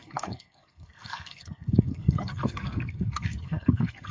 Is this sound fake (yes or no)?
yes